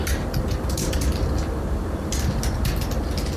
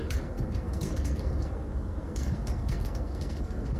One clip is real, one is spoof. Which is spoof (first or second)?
second